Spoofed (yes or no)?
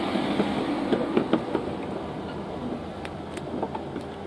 no